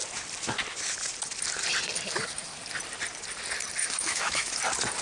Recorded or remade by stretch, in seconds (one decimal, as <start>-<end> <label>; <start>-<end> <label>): 0.0-3.8 recorded; 3.8-4.6 remade; 4.6-5.0 recorded